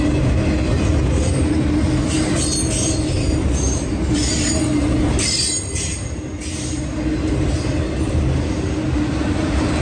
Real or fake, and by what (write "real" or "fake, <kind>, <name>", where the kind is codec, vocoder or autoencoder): real